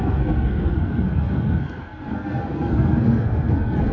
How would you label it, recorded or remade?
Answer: remade